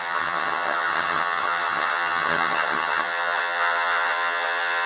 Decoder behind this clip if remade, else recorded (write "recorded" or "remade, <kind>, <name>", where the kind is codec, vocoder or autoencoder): remade, vocoder, HiFi-GAN